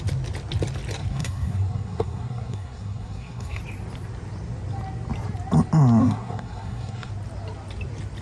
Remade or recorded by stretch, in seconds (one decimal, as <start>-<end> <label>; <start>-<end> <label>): 0.0-1.0 recorded; 1.0-3.6 remade; 3.6-6.0 recorded; 6.0-7.1 remade; 7.1-8.2 recorded